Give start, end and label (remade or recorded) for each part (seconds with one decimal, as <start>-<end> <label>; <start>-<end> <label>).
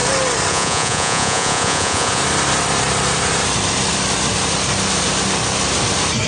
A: 0.0-0.5 recorded; 0.5-2.2 remade; 2.2-6.3 recorded